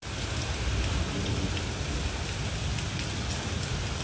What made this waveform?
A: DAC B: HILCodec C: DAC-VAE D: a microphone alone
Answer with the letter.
D